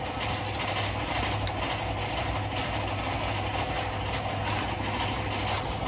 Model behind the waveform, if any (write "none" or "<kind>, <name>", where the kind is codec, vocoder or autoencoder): none